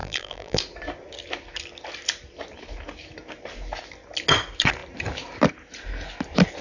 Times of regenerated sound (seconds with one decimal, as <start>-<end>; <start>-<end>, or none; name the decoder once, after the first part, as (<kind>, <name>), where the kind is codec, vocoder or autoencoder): 0.0-0.6 (vocoder, BigVGAN v2)